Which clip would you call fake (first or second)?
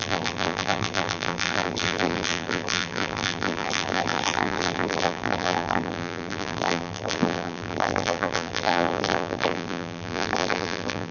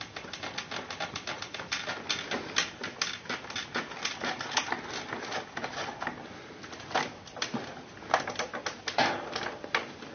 first